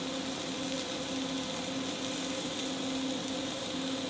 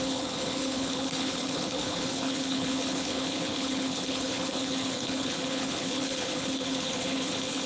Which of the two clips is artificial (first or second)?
second